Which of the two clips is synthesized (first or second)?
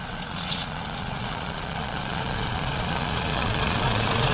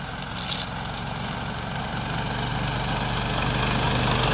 first